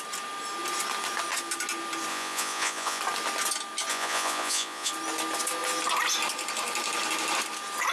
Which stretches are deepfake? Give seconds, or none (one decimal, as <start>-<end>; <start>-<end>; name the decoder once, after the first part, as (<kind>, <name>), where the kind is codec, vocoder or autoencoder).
2.1-3.0 (vocoder, Vocos); 3.9-4.9